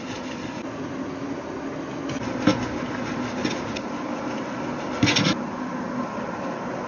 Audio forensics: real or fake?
real